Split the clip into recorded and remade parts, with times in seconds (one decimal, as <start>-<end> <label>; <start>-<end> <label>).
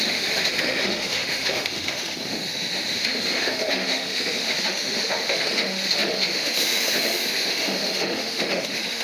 0.0-9.0 remade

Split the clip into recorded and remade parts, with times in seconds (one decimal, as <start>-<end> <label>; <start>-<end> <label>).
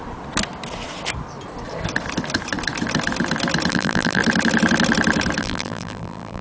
0.0-3.7 recorded; 3.7-4.2 remade; 4.2-5.4 recorded; 5.4-6.4 remade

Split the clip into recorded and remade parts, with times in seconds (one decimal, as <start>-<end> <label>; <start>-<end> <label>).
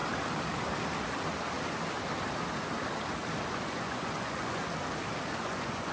0.0-3.5 recorded; 3.5-4.6 remade; 4.6-5.4 recorded; 5.4-5.9 remade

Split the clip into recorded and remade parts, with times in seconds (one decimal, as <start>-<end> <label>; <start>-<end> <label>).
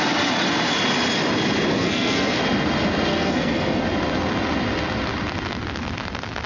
0.0-1.7 recorded; 1.7-2.4 remade; 2.4-3.1 recorded; 3.1-3.8 remade; 3.8-6.5 recorded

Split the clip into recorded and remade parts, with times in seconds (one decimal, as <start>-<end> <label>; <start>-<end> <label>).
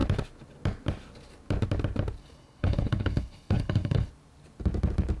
0.0-2.2 recorded; 2.2-4.1 remade; 4.1-5.2 recorded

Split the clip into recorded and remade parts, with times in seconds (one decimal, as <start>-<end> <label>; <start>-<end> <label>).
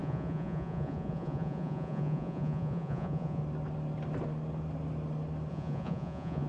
0.0-3.4 remade; 3.4-5.5 recorded; 5.5-6.5 remade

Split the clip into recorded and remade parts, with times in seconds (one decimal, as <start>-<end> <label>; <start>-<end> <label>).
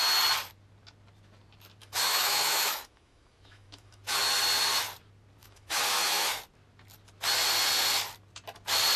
0.0-1.8 recorded; 1.8-4.2 remade; 4.2-5.4 recorded; 5.4-6.4 remade; 6.4-9.0 recorded